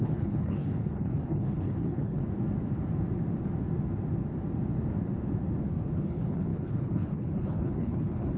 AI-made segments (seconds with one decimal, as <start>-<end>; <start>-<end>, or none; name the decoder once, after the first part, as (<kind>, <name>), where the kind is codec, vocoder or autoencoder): 0.0-2.2 (codec, HILCodec); 6.0-8.4